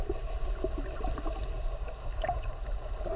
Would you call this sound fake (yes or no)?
no